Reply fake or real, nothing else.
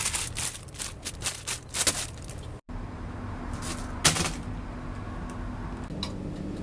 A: real